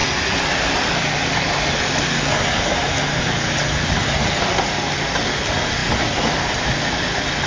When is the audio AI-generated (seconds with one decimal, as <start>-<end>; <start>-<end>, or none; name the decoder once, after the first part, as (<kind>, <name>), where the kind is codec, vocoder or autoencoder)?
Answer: none